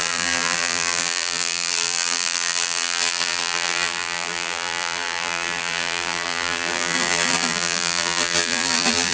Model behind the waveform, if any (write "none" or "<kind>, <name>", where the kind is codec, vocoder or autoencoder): vocoder, BigVGAN v2